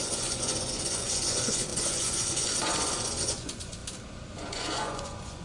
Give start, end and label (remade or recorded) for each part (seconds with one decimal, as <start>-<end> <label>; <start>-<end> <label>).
0.0-3.8 remade; 3.8-4.3 recorded; 4.3-5.4 remade